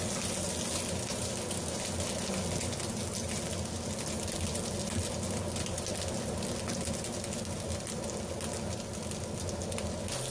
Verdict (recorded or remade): recorded